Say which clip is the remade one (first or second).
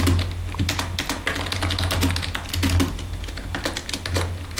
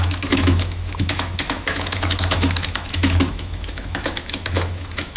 second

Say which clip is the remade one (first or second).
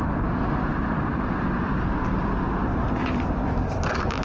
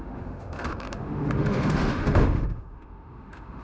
second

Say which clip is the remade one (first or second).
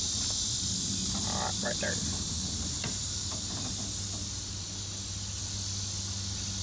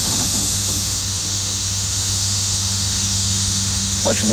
second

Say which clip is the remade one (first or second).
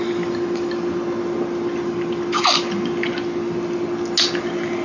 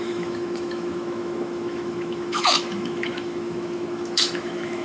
second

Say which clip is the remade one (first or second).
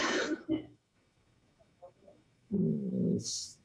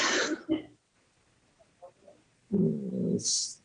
first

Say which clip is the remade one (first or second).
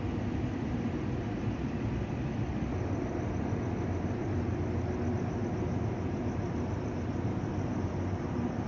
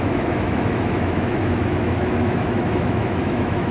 second